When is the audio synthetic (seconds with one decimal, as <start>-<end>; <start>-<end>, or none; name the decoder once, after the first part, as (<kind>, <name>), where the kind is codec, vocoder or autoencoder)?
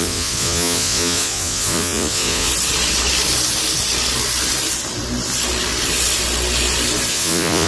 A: 0.0-2.5 (vocoder, Vocos); 7.1-7.7